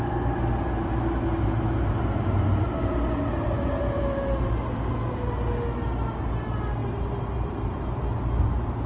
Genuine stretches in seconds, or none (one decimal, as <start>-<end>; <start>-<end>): 0.0-6.8; 7.8-8.9